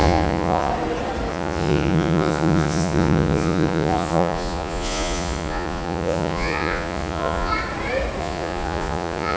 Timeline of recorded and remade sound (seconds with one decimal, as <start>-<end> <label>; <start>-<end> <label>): 0.0-0.7 remade; 0.7-1.3 recorded; 1.3-7.5 remade; 7.5-8.2 recorded; 8.2-9.4 remade